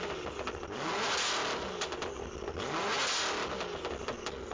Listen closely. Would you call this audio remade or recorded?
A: recorded